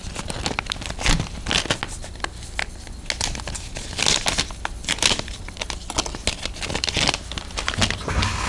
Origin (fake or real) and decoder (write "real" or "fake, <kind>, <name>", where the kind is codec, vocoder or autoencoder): real